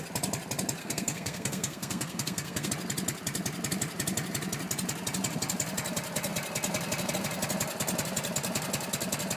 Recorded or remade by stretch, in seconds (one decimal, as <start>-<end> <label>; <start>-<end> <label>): 0.0-0.8 recorded; 0.8-2.7 remade; 2.7-9.4 recorded